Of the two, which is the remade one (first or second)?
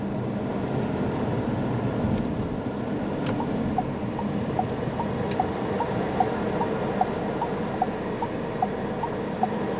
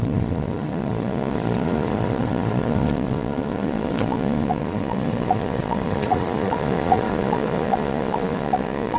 second